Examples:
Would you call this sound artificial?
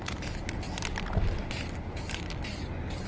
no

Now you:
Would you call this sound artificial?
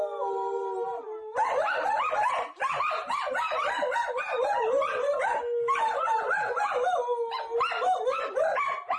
no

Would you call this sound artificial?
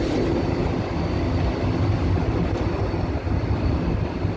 no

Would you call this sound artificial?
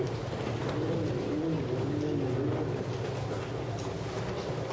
no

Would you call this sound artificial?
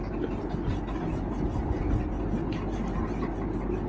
no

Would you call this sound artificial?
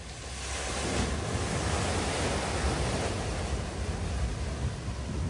no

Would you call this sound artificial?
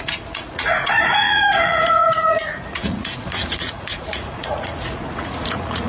yes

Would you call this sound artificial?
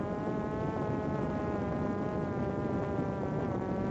no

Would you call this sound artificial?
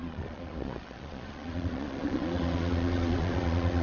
yes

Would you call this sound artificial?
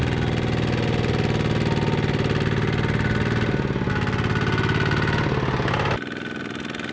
no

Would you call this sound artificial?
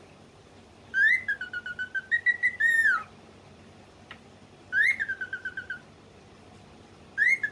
no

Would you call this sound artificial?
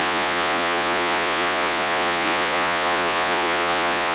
yes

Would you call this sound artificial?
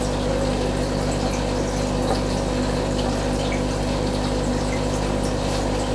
no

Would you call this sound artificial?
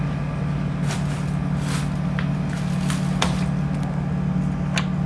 no